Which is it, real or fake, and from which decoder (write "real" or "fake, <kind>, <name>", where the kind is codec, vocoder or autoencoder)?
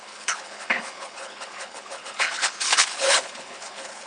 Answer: fake, codec, HILCodec